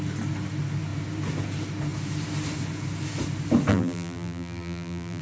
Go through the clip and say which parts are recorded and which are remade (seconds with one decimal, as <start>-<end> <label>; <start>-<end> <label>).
0.0-3.7 recorded; 3.7-5.2 remade